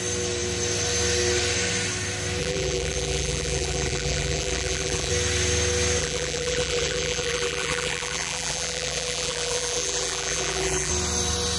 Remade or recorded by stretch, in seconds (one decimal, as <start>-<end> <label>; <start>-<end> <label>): 0.0-2.4 recorded; 2.4-5.1 remade; 5.1-6.0 recorded; 6.0-10.9 remade; 10.9-11.6 recorded